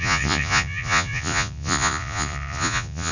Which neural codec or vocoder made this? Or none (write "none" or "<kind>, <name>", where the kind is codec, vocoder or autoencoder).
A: vocoder, Vocos